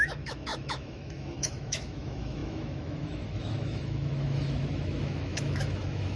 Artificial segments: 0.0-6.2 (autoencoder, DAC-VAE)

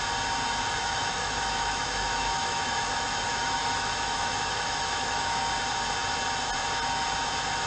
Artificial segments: 0.8-5.4 (autoencoder, DAC-VAE)